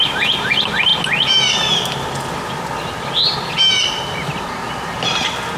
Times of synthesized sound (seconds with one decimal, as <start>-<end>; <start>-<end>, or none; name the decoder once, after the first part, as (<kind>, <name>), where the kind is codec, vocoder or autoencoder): none